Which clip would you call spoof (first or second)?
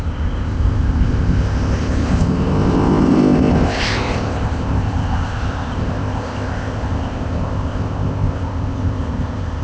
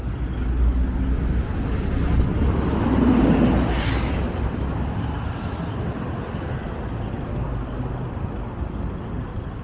first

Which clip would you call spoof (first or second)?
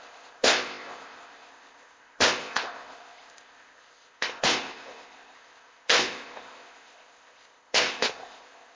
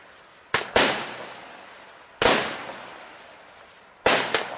first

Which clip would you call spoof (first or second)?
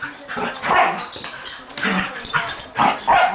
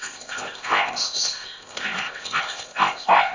second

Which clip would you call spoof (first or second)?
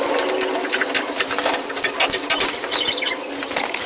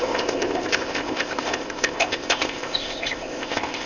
second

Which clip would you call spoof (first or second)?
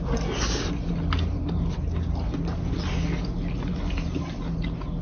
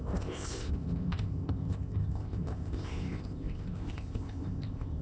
second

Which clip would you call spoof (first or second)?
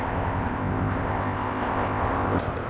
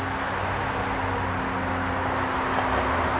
first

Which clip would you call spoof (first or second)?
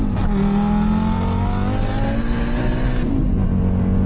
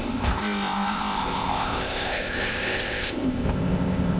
second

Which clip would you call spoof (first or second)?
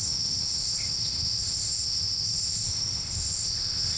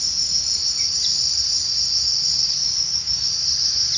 first